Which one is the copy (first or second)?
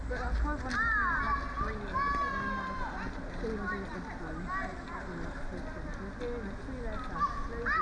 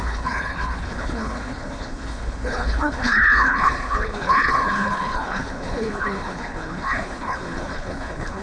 second